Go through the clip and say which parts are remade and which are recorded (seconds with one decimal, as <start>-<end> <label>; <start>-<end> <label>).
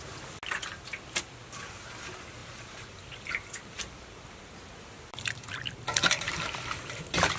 0.0-2.4 recorded; 2.4-6.8 remade; 6.8-7.4 recorded